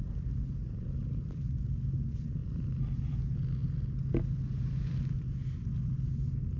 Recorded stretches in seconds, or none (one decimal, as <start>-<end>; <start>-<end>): 0.0-2.4; 3.2-6.6